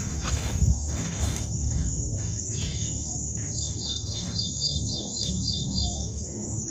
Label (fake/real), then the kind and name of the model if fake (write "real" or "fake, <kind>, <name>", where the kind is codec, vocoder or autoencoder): fake, codec, DAC